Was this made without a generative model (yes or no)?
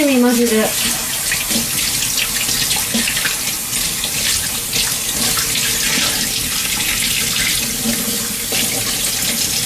yes